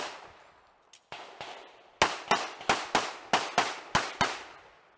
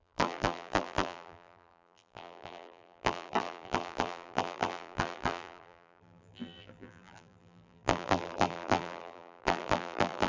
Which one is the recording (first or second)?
first